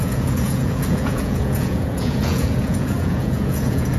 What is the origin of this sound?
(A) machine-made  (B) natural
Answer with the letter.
A